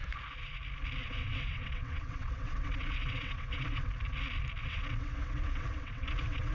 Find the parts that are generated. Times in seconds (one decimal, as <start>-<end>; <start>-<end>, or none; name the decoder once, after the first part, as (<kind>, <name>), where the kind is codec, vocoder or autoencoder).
1.0-3.9 (vocoder, WaveNeXt); 4.6-6.5